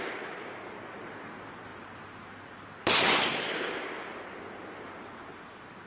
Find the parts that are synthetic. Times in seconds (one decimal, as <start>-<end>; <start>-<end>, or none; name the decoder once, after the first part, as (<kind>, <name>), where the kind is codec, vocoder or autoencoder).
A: none